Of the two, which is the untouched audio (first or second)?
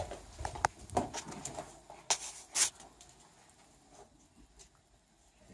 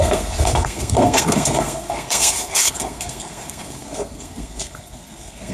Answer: first